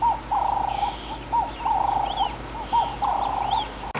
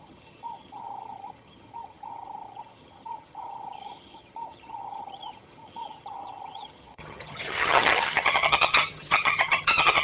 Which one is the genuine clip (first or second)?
first